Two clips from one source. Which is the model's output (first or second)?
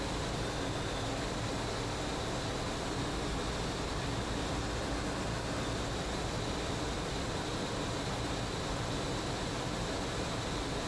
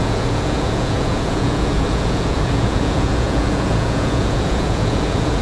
second